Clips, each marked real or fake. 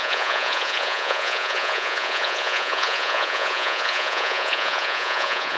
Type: fake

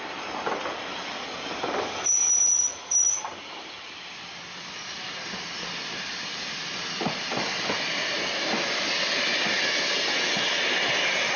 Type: real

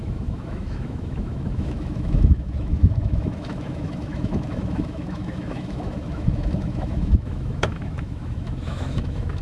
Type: fake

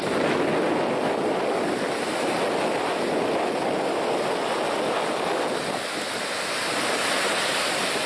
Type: real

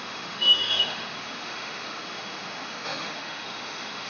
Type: fake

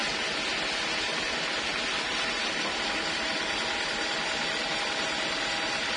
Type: real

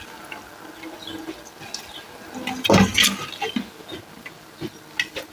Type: real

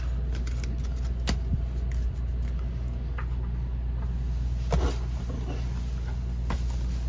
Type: real